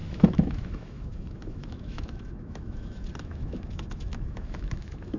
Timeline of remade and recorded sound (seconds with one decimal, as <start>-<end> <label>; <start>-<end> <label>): 0.0-5.2 remade